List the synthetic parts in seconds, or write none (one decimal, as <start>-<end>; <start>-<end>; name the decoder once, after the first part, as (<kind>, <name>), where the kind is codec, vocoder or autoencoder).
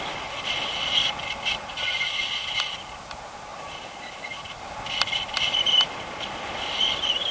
3.5-7.3 (vocoder, BigVGAN v2)